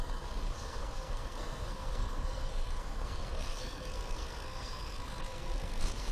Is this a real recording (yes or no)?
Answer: no